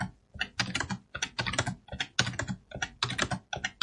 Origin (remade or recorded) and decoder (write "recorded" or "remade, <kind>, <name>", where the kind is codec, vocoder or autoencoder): recorded